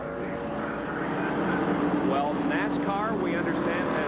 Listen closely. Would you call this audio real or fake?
real